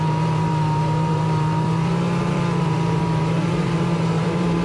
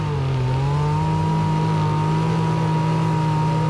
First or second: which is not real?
first